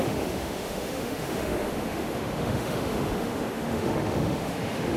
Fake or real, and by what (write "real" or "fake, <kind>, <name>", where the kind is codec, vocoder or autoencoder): fake, autoencoder, DAC-VAE